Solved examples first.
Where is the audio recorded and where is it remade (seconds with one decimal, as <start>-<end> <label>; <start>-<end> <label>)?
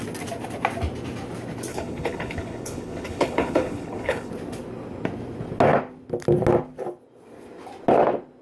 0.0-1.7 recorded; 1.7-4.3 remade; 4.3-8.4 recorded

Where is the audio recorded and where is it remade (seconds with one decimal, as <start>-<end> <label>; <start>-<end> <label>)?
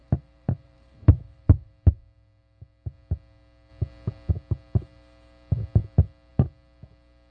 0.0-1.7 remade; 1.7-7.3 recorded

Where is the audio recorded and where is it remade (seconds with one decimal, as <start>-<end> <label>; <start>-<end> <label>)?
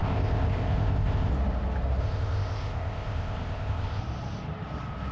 0.0-1.3 remade; 1.3-2.0 recorded; 2.0-4.0 remade; 4.0-5.1 recorded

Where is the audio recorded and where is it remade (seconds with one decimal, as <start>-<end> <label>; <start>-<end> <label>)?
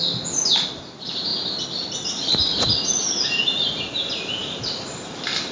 0.0-5.5 recorded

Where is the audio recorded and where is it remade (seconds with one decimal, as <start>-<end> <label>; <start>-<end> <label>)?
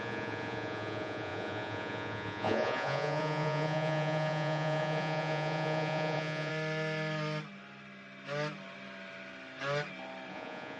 0.0-6.5 remade; 6.5-10.3 recorded; 10.3-10.8 remade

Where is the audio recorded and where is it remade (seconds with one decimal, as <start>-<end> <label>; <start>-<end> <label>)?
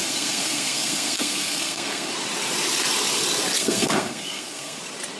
0.0-2.1 remade; 2.1-3.6 recorded; 3.6-4.8 remade; 4.8-5.2 recorded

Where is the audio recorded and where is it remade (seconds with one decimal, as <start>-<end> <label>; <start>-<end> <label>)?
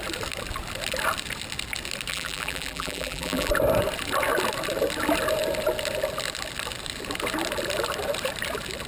0.0-2.1 recorded; 2.1-3.5 remade; 3.5-8.9 recorded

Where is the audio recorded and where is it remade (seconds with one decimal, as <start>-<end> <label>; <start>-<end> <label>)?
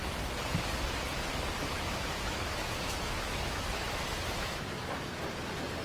0.0-1.6 recorded; 1.6-5.1 remade; 5.1-5.8 recorded